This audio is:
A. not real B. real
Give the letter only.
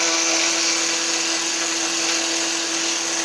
B